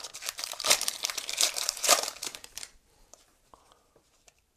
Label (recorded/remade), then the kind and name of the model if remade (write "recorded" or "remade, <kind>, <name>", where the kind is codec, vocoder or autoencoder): remade, vocoder, BigVGAN v2